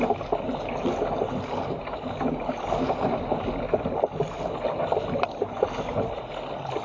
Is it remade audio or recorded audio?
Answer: recorded